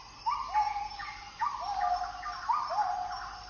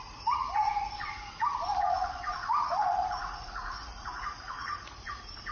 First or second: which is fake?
second